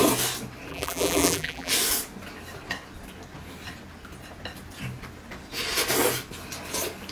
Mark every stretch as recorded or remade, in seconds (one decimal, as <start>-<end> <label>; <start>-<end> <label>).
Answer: 0.0-0.7 recorded; 0.7-1.7 remade; 1.7-7.1 recorded